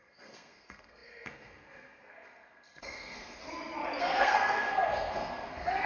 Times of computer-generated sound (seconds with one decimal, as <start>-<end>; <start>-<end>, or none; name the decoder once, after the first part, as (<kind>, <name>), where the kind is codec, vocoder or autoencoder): 0.0-3.4 (codec, SNAC); 4.0-5.9